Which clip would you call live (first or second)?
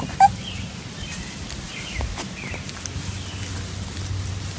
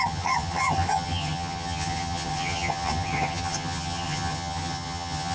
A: first